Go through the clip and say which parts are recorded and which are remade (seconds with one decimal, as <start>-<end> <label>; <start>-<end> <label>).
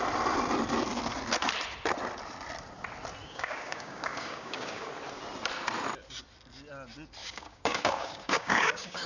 0.0-3.2 recorded; 3.2-4.9 remade; 4.9-7.2 recorded; 7.2-9.1 remade